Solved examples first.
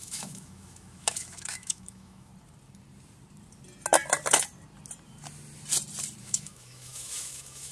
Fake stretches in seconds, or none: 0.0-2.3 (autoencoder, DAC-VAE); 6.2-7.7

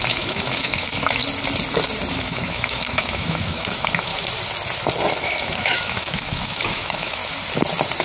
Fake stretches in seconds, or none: 0.0-1.2 (autoencoder, DAC-VAE); 2.1-4.1; 5.2-7.2

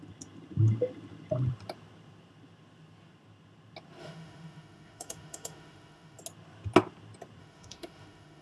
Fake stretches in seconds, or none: 4.0-6.2 (autoencoder, DAC-VAE); 7.4-8.4

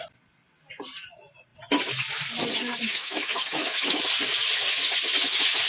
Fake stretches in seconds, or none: 2.9-4.0 (autoencoder, DAC-VAE)

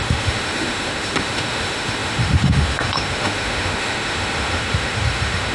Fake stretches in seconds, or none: 0.0-5.5 (autoencoder, DAC-VAE)